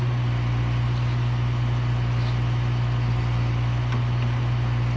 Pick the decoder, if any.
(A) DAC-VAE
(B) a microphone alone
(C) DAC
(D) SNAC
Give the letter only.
B